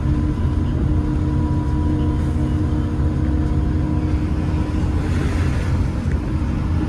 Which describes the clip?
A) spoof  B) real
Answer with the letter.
B